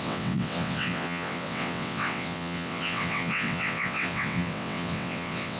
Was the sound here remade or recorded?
remade